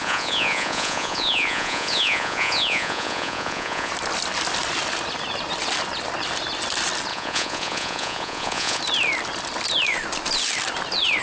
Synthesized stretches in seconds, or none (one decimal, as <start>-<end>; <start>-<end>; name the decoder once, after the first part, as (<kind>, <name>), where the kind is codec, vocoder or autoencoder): 0.0-3.9 (vocoder, Vocos); 7.1-8.8